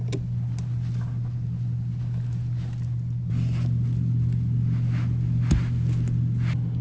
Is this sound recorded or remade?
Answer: recorded